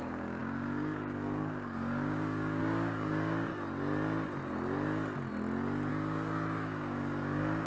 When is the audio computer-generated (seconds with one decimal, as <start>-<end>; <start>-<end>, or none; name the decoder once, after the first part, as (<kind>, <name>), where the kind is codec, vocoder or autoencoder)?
0.0-3.5 (codec, DAC); 5.9-7.7